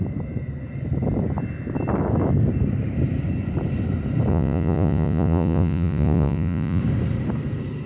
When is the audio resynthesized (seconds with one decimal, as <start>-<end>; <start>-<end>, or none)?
4.3-6.8